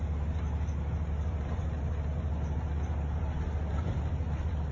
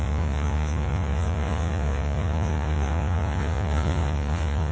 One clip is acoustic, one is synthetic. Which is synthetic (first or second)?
second